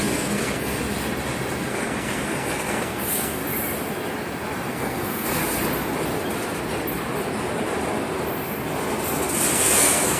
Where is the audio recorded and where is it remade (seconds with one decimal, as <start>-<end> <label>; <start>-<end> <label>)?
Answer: 0.0-0.8 remade; 0.8-1.6 recorded; 1.6-3.4 remade; 3.4-4.7 recorded; 4.7-5.4 remade; 5.4-9.5 recorded; 9.5-10.2 remade